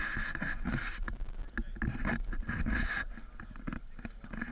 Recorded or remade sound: recorded